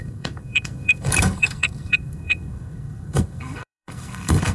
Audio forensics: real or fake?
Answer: fake